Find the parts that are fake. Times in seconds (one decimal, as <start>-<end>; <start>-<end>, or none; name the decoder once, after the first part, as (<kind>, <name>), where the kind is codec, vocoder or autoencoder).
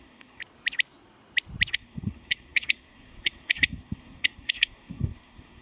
0.0-0.4 (codec, SNAC); 1.7-5.6